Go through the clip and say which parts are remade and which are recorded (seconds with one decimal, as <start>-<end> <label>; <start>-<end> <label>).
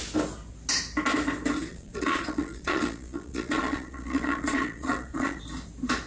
0.0-1.7 recorded; 1.7-5.4 remade; 5.4-6.1 recorded